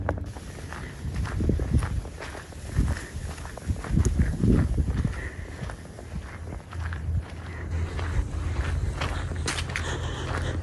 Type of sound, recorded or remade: recorded